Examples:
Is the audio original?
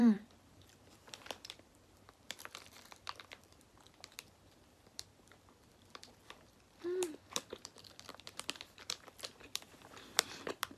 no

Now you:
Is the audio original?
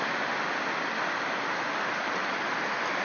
yes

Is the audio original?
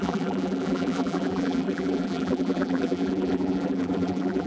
no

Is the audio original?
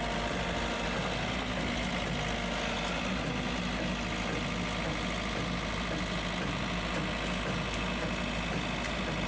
yes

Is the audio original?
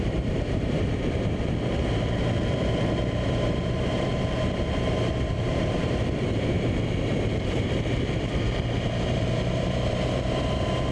no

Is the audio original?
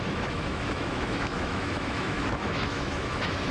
no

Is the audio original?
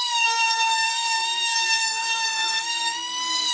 no